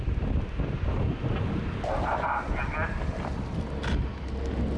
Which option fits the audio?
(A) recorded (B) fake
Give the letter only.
A